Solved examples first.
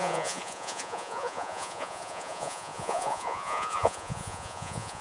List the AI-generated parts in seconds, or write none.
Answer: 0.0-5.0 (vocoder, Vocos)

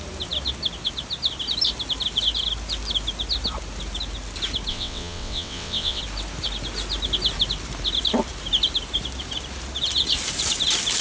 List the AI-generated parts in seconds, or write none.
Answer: 4.7-6.0 (vocoder, WaveNeXt)

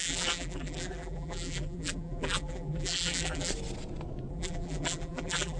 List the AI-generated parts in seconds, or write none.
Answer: 0.0-3.5 (vocoder, BigVGAN v2); 4.3-5.6